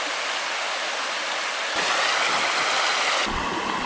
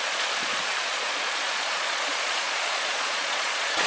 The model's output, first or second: second